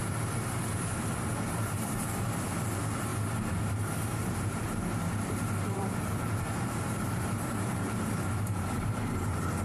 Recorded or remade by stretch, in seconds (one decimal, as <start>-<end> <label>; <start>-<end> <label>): 0.0-3.1 remade; 3.1-3.7 recorded; 3.7-9.6 remade